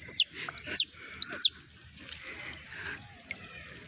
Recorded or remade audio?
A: recorded